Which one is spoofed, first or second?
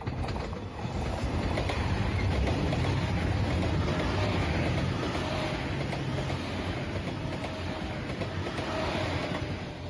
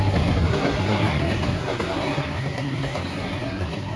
second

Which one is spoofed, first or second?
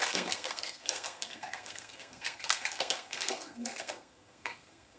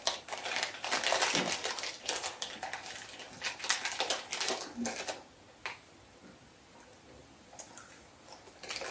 first